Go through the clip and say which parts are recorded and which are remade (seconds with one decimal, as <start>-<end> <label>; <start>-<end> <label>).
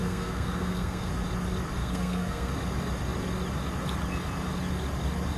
0.0-1.1 remade; 1.1-1.8 recorded; 1.8-2.5 remade; 2.5-5.4 recorded